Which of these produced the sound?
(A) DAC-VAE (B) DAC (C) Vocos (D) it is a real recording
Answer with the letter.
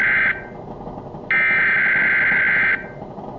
D